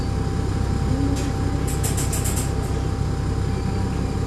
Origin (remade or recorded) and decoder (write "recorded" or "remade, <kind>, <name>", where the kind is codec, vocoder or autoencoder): recorded